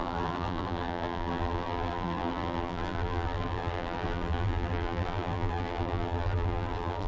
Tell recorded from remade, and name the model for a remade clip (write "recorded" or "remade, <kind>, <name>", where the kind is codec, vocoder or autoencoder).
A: remade, vocoder, BigVGAN v2